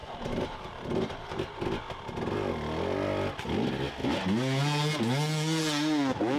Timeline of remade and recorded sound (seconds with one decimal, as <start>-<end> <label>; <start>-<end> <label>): 0.0-1.4 remade; 1.4-6.4 recorded